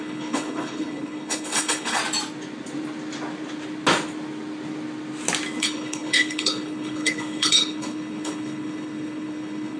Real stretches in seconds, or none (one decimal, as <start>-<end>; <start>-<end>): 2.0-5.6